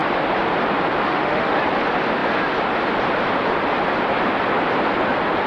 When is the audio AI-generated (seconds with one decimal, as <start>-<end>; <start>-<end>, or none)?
1.1-1.6

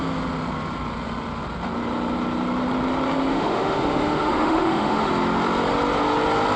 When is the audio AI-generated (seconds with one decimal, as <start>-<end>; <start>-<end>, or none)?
3.3-5.1